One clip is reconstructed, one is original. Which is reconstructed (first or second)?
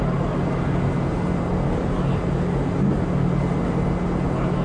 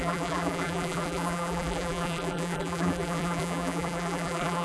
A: second